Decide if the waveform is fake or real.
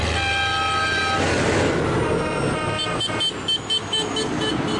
real